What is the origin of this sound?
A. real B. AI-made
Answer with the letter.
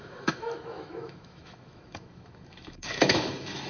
B